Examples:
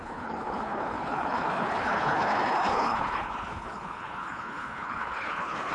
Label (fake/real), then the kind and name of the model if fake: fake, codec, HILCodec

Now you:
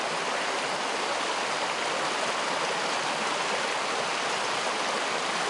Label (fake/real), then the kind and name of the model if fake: real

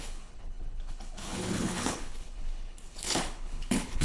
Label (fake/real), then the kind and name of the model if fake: fake, codec, HILCodec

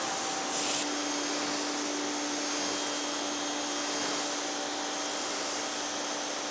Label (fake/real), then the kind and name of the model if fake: real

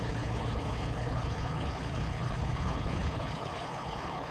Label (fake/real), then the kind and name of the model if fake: fake, codec, HILCodec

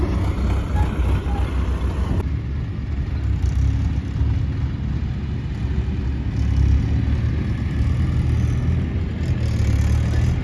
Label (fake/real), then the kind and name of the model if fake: real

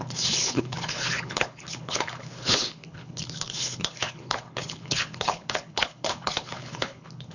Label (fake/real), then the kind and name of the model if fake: fake, codec, HILCodec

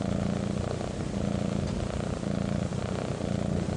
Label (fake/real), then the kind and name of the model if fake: real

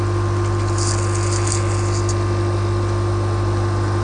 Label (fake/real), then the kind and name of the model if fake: real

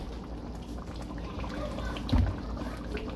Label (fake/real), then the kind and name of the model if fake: real